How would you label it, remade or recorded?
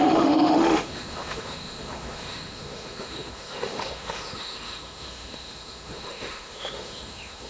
remade